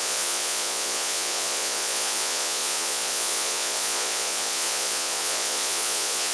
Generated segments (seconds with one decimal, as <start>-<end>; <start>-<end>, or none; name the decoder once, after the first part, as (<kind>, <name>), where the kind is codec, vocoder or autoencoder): 0.0-6.3 (vocoder, Vocos)